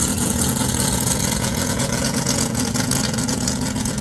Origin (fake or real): fake